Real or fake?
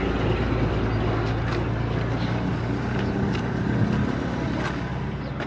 real